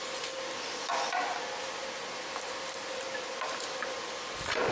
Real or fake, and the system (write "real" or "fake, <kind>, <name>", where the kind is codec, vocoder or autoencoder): real